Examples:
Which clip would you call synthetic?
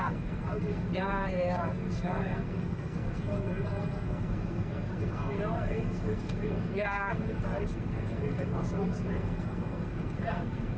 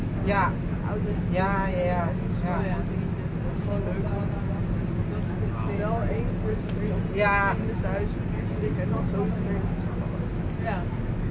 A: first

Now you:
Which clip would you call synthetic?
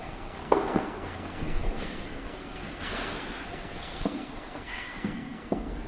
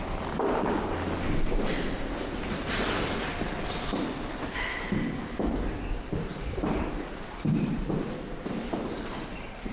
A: first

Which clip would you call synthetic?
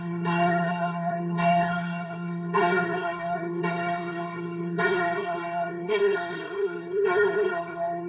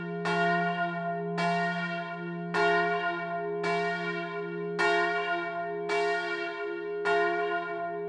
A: first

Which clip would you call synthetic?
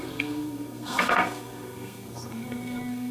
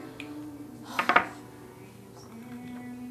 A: first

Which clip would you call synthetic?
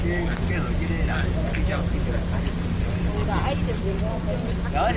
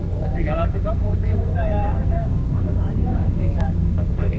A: second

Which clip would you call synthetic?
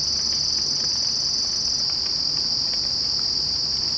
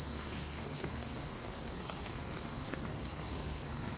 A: second